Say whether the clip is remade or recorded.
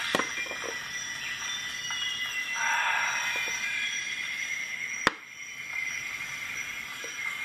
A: recorded